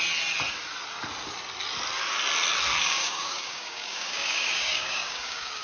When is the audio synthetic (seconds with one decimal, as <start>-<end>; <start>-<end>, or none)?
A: 2.8-5.6

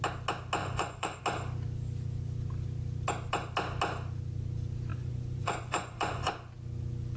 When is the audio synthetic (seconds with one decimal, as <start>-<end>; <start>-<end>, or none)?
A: 0.6-1.2; 4.9-6.3

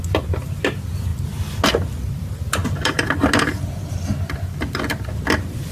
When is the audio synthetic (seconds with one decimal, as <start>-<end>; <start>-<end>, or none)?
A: none

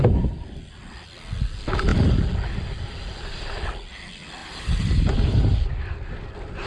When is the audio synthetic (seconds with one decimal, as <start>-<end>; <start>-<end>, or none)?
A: 4.4-5.8

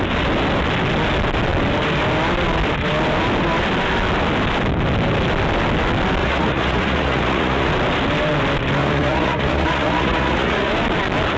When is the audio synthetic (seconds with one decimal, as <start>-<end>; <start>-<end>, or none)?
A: 6.2-7.7; 8.8-10.7

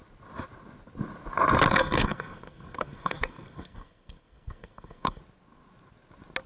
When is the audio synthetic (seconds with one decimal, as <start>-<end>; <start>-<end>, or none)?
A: 1.8-5.2